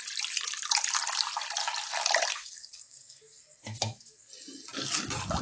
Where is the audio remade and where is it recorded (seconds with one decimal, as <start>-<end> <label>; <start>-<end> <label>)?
0.0-2.3 recorded; 2.3-4.3 remade; 4.3-5.4 recorded